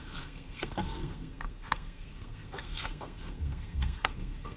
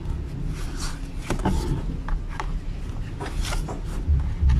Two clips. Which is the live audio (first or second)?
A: second